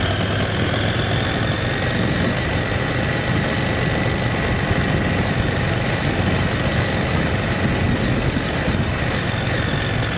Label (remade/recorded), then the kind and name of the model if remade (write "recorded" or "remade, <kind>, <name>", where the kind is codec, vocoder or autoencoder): recorded